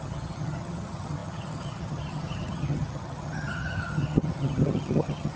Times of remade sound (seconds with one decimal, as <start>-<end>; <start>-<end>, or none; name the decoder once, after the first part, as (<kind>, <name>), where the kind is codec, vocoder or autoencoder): 0.0-5.4 (vocoder, HiFi-GAN)